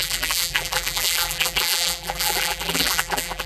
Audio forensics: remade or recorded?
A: remade